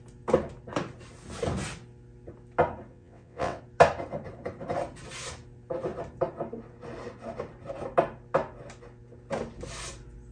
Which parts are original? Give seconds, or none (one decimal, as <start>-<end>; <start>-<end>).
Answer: 0.0-2.9; 3.6-10.3